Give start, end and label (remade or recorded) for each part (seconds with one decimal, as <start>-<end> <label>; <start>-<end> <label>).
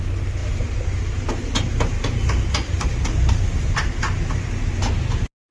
0.0-5.5 recorded